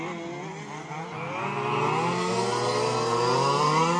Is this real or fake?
real